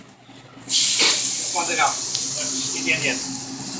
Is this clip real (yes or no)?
yes